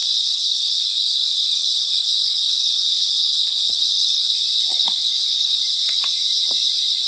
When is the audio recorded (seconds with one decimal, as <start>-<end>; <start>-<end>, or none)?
4.3-4.7; 5.6-7.1